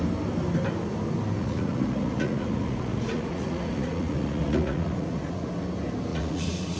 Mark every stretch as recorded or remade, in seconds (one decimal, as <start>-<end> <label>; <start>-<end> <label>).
0.0-1.4 recorded; 1.4-5.5 remade; 5.5-6.1 recorded; 6.1-6.8 remade